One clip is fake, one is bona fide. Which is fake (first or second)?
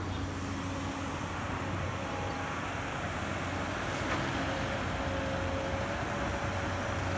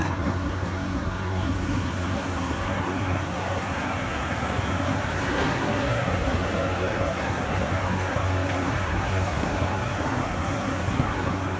second